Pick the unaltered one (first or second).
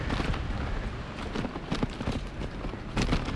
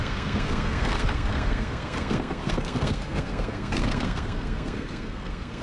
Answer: first